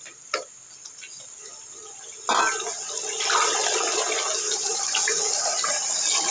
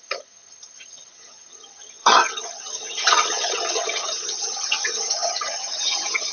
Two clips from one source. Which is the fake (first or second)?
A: second